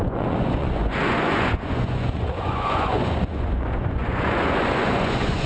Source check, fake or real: fake